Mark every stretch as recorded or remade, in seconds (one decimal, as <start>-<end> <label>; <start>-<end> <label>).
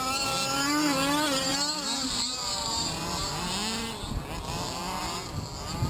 0.0-1.5 recorded; 1.5-3.3 remade; 3.3-5.9 recorded